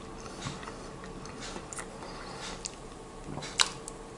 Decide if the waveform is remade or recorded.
recorded